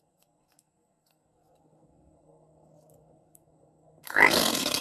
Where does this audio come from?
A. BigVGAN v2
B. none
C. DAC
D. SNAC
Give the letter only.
D